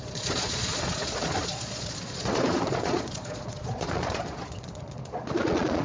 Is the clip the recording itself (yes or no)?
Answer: no